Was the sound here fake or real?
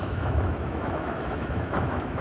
fake